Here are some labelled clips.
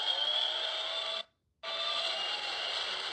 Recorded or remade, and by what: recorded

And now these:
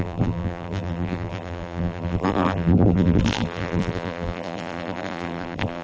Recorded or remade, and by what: remade, vocoder, BigVGAN v2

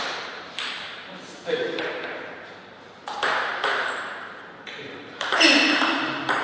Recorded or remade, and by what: remade, vocoder, BigVGAN v2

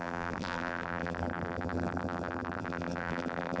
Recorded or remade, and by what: remade, vocoder, BigVGAN v2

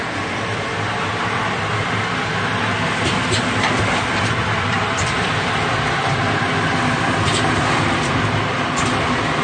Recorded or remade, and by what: remade, vocoder, BigVGAN v2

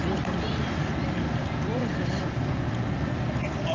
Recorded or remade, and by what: recorded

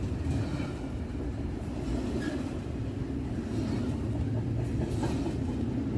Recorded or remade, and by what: recorded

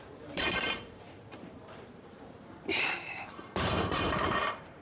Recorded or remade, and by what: remade, vocoder, BigVGAN v2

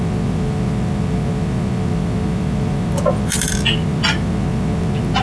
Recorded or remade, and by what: recorded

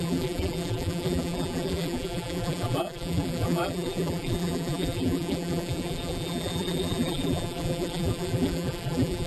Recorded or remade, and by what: remade, vocoder, BigVGAN v2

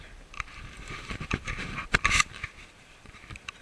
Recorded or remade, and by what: remade, vocoder, BigVGAN v2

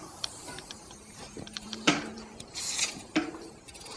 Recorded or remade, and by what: remade, vocoder, BigVGAN v2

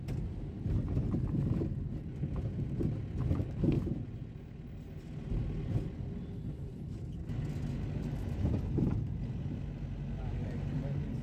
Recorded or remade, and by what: recorded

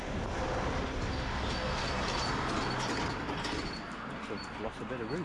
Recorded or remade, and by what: recorded